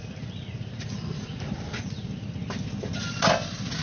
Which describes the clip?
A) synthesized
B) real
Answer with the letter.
B